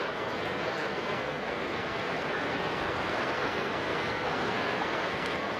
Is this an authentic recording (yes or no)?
no